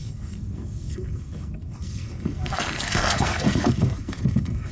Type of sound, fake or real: fake